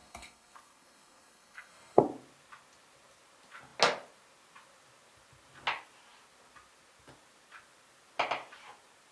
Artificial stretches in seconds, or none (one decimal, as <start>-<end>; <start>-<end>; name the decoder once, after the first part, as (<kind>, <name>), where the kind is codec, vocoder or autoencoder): 0.0-2.0 (codec, SNAC)